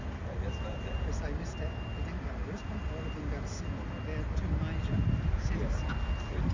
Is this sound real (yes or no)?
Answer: yes